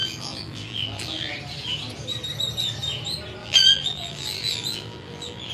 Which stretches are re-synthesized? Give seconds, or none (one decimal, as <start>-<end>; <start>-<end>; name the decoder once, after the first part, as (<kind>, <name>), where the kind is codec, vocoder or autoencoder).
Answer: 0.0-1.3 (vocoder, BigVGAN v2); 3.4-5.5

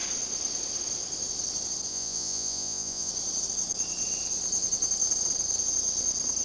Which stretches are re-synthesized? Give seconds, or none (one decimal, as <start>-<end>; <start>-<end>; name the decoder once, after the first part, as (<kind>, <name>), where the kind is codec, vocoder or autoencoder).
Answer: 1.9-3.1 (vocoder, Vocos)

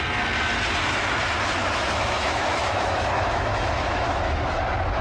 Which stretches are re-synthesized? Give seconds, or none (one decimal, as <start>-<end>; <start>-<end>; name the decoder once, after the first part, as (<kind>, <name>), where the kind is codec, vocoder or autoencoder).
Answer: 1.6-4.6 (autoencoder, DAC-VAE)

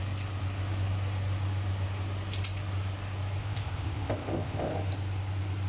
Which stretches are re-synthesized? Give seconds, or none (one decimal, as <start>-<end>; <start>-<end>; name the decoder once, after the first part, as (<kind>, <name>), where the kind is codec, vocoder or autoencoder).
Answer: 3.4-4.7 (codec, ZipCodec)